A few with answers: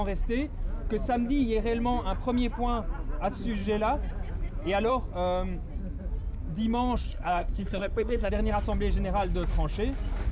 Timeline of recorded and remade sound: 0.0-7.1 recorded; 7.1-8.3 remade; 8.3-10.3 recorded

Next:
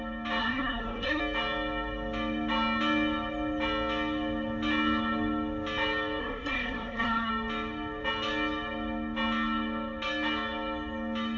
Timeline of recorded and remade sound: 0.0-0.4 recorded; 0.4-1.2 remade; 1.2-6.2 recorded; 6.2-7.3 remade; 7.3-11.4 recorded